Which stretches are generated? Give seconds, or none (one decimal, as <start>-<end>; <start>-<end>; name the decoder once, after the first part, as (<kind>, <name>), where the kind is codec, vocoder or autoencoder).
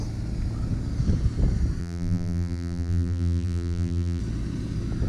1.8-4.2 (vocoder, BigVGAN v2)